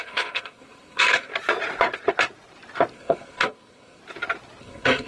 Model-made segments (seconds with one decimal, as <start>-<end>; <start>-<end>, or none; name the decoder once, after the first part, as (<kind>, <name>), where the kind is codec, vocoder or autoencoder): 0.0-1.3 (codec, SNAC); 2.9-4.0; 4.6-5.1